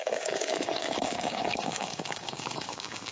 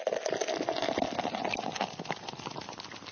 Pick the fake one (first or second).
first